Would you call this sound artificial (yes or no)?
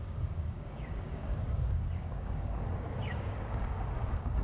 yes